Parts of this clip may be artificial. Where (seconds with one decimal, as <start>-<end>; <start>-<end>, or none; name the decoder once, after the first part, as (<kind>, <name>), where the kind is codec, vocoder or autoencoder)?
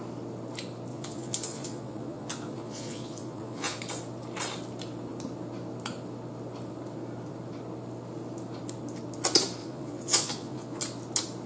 0.9-3.8 (vocoder, Vocos); 9.6-10.8